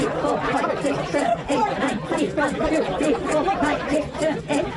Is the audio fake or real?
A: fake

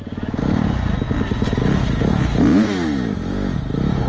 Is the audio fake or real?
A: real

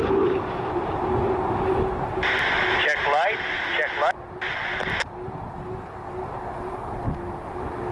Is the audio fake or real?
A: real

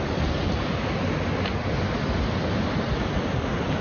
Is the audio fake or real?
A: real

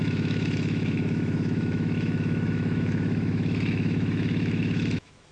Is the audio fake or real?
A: fake